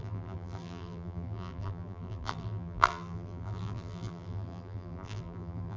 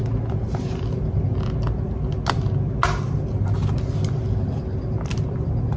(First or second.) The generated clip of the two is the first